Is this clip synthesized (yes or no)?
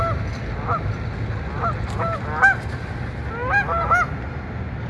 no